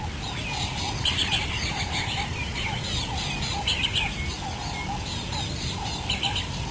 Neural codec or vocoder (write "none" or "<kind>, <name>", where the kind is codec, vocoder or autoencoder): none